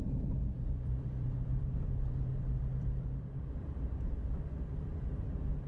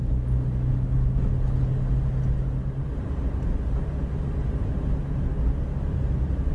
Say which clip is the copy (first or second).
first